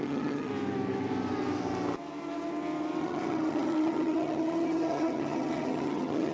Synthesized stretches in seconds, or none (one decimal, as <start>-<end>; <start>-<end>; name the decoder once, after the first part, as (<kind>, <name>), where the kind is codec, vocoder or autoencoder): 0.0-0.5 (vocoder, HiFi-GAN); 3.0-6.3